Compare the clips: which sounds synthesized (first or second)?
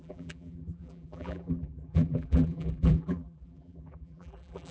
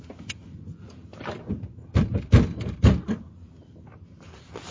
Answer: first